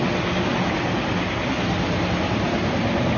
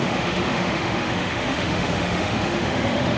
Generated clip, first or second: second